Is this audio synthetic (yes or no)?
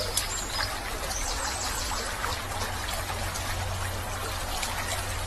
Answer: no